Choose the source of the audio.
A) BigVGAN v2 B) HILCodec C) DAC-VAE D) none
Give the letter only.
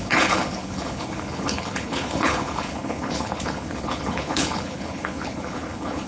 B